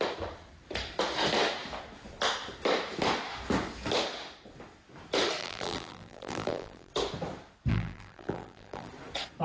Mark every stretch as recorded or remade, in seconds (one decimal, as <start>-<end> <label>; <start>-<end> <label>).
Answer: 0.0-5.4 recorded; 5.4-6.9 remade; 6.9-7.7 recorded; 7.7-8.9 remade; 8.9-9.4 recorded